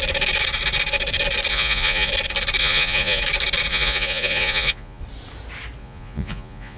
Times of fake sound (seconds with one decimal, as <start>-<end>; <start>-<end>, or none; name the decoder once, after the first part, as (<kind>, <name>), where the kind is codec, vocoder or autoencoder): 1.5-2.1 (vocoder, Vocos); 2.6-3.2; 3.7-5.0; 5.8-6.8